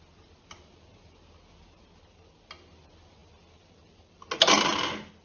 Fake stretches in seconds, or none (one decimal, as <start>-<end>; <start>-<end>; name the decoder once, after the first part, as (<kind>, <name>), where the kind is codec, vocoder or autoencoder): none